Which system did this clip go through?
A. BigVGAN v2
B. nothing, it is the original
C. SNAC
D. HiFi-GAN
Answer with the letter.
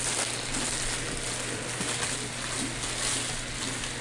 B